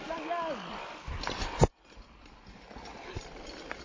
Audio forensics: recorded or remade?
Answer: recorded